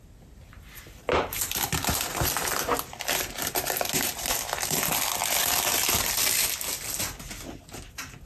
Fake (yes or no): no